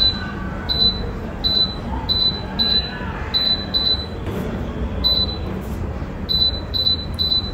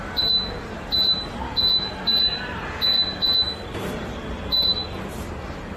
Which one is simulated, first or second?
second